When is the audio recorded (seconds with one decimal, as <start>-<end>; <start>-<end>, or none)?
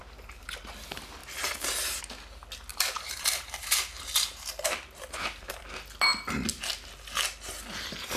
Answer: 0.6-2.7; 5.6-8.2